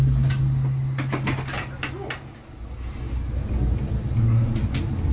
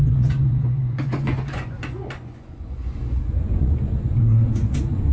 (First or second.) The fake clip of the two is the second